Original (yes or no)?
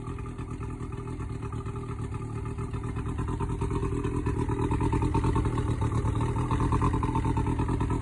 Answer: yes